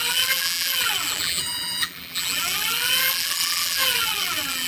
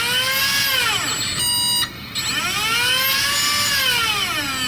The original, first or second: second